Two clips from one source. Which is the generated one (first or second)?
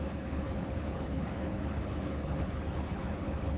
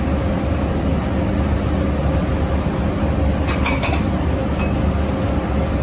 first